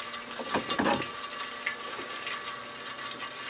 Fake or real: real